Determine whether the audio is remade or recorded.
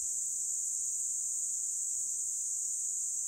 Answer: recorded